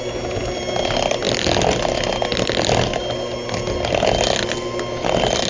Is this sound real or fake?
real